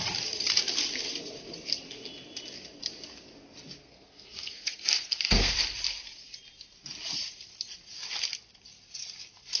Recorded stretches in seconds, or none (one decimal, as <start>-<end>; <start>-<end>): 0.0-3.8; 5.5-9.6